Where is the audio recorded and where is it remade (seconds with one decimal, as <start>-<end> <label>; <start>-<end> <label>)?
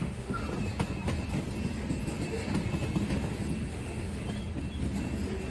0.0-0.4 remade; 0.4-3.7 recorded; 3.7-4.2 remade; 4.2-5.5 recorded